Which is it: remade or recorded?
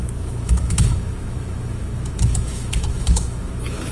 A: remade